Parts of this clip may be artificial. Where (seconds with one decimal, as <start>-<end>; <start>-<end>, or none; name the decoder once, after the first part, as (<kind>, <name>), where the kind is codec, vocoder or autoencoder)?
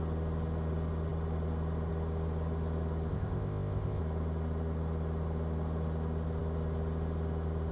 3.1-4.0 (codec, ZipCodec)